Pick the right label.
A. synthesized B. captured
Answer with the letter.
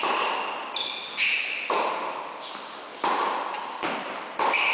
B